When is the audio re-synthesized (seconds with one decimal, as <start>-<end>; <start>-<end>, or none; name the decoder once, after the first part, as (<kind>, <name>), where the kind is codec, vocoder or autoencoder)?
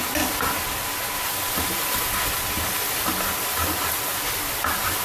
none